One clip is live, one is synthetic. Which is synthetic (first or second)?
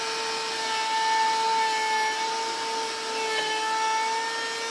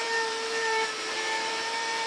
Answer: second